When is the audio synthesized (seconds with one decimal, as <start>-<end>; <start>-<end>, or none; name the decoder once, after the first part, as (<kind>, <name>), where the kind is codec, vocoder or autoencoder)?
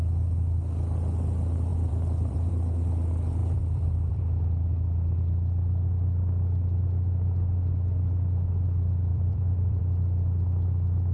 1.7-2.5 (vocoder, BigVGAN v2); 3.4-4.2; 9.1-9.8